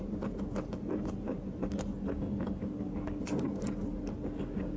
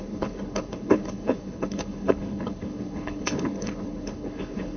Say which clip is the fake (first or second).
second